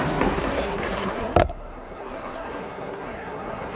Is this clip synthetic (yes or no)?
yes